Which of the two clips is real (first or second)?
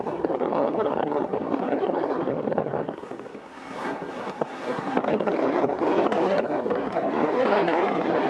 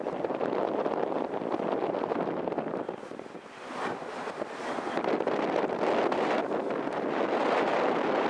second